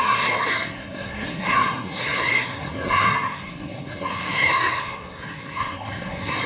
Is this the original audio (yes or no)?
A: no